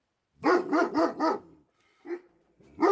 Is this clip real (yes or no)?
yes